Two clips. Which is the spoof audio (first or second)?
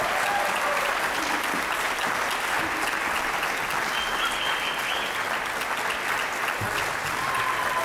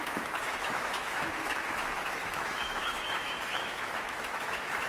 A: second